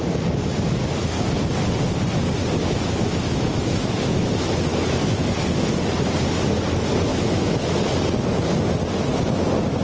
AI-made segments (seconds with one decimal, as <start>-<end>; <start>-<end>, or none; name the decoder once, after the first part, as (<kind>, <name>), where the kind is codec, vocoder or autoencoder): 2.6-4.3 (autoencoder, DAC-VAE); 4.7-5.3; 7.1-7.9